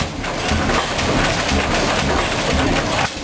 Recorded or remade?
recorded